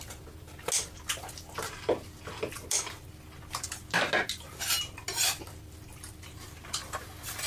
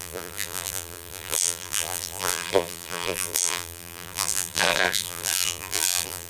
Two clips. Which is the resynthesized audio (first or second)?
second